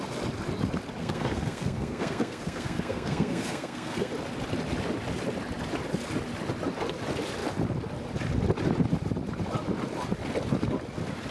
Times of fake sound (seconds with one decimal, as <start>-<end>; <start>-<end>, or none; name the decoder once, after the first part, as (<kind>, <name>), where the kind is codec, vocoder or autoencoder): 1.0-4.1 (codec, SNAC)